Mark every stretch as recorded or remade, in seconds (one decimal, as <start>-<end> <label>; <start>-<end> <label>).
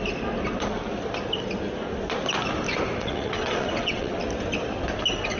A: 0.0-3.0 recorded; 3.0-4.1 remade; 4.1-5.4 recorded